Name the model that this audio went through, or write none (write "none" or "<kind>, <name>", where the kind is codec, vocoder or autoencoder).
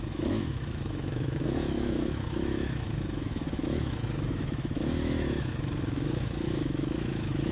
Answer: autoencoder, DAC-VAE